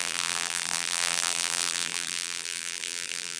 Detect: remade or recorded remade